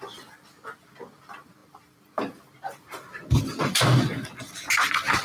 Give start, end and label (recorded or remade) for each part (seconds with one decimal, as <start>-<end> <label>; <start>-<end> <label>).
0.0-5.2 remade